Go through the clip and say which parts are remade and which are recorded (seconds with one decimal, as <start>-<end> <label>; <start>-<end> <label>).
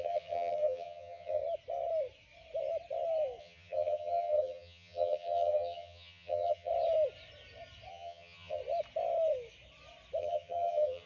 0.0-1.4 remade; 1.4-3.4 recorded; 3.4-6.7 remade; 6.7-7.9 recorded; 7.9-8.6 remade; 8.6-10.2 recorded; 10.2-11.1 remade